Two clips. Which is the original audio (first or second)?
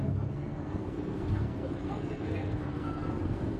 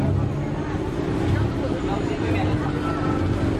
second